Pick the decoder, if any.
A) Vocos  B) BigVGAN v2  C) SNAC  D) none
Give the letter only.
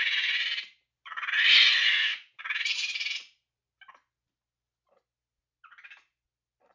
D